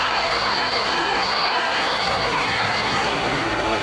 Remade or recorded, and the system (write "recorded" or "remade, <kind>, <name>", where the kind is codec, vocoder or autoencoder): remade, codec, SNAC